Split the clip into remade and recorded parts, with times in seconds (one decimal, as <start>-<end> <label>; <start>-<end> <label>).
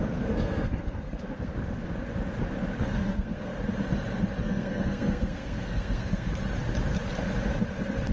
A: 0.0-1.5 remade; 1.5-2.9 recorded; 2.9-3.5 remade; 3.5-4.4 recorded; 4.4-6.3 remade; 6.3-8.1 recorded